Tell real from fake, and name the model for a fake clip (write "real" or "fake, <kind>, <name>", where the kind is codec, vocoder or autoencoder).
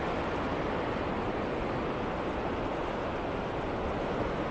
real